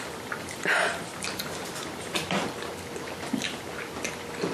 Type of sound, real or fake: real